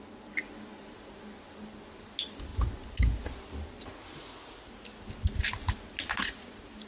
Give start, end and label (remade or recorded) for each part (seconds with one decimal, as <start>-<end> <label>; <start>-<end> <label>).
0.0-6.9 recorded